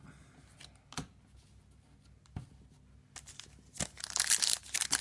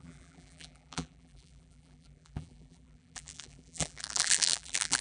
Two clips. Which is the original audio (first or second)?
first